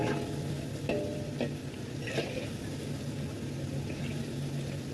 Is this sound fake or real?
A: real